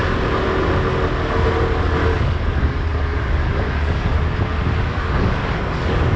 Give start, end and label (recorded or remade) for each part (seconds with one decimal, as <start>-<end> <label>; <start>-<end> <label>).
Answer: 0.0-2.2 recorded; 2.2-4.1 remade; 4.1-4.9 recorded; 4.9-6.2 remade